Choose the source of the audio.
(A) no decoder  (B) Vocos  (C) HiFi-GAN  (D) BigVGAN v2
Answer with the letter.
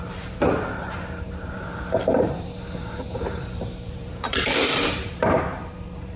D